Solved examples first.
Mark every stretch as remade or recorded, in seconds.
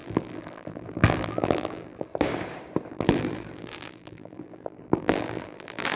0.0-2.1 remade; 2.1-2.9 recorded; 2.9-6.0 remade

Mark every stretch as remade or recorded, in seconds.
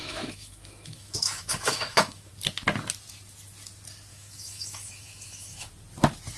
0.0-2.3 remade; 2.3-4.1 recorded; 4.1-5.7 remade; 5.7-6.4 recorded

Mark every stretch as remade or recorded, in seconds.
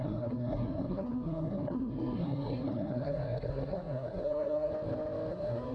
0.0-4.7 remade; 4.7-5.3 recorded; 5.3-5.7 remade